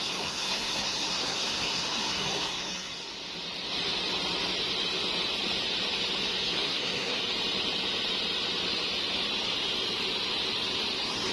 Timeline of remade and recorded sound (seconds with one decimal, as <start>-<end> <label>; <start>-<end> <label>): 0.0-3.1 remade; 3.1-6.4 recorded; 6.4-7.2 remade; 7.2-11.3 recorded